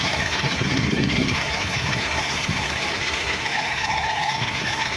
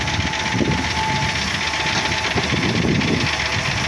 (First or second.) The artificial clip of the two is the first